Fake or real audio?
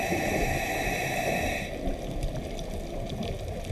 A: real